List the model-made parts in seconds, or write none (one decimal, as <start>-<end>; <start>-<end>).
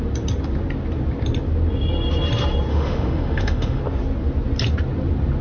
2.7-3.8